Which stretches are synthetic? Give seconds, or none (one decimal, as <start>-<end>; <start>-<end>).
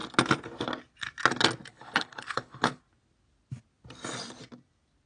1.7-2.8